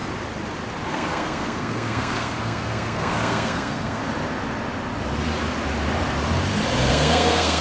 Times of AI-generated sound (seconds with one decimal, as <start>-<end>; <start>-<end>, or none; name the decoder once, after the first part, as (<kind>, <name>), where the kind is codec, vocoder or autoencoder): 0.9-4.0 (codec, SNAC); 6.9-7.6